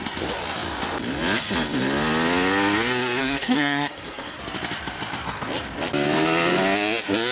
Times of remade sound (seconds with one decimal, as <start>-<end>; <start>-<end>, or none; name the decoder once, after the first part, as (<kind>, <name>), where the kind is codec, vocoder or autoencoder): 3.2-4.4 (codec, SNAC)

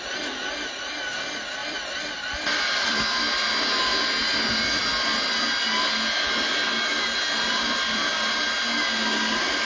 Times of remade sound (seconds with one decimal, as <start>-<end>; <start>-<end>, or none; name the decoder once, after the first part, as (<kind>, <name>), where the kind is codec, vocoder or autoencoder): 1.6-3.0 (vocoder, BigVGAN v2)

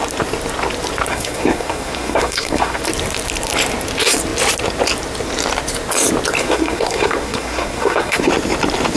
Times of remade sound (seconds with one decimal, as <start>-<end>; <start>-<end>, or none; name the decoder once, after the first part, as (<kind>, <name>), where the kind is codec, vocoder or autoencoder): 1.1-2.8 (codec, SNAC); 6.4-8.3